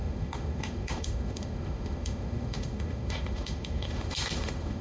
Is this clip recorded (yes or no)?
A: no